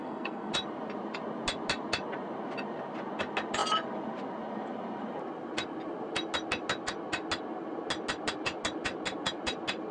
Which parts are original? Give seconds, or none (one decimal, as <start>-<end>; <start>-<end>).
0.5-9.9